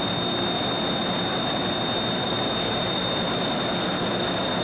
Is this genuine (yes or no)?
yes